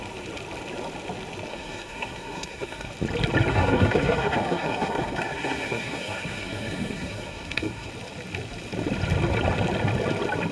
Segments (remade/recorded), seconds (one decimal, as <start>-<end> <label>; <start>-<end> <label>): 0.0-1.5 recorded; 1.5-2.9 remade; 2.9-3.5 recorded; 3.5-7.9 remade; 7.9-10.5 recorded